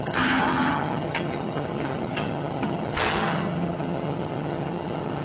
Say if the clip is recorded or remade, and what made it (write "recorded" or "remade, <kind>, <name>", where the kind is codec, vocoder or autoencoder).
remade, vocoder, HiFi-GAN